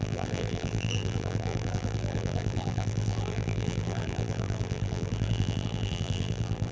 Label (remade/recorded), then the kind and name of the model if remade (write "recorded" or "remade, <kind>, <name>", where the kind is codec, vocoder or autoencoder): remade, vocoder, BigVGAN v2